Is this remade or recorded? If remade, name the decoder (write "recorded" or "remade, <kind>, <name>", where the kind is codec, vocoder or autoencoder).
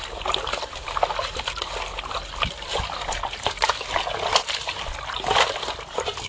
recorded